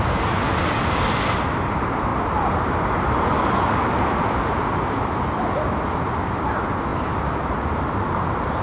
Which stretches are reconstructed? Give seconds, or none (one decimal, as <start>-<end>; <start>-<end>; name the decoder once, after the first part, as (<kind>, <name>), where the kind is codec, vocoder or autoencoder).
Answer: 2.1-4.2 (vocoder, BigVGAN v2); 6.9-7.8